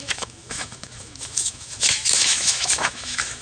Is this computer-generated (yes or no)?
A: yes